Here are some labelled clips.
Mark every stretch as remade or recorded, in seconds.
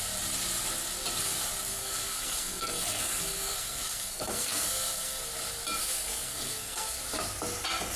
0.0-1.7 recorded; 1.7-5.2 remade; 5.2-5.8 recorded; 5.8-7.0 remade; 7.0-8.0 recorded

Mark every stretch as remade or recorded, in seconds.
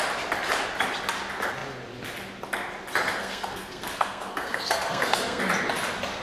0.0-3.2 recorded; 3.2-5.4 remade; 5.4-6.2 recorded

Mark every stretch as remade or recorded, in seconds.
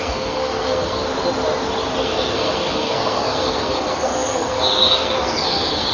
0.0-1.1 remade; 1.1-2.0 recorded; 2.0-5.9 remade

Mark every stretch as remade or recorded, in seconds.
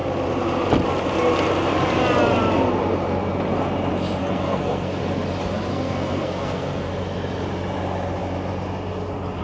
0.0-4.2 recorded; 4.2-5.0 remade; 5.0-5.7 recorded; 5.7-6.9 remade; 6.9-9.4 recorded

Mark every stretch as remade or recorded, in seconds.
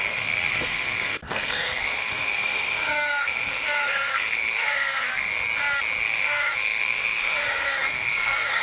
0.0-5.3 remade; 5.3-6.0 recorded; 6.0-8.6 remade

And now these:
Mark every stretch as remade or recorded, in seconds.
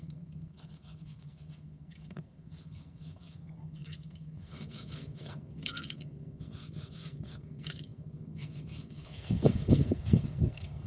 0.0-10.9 remade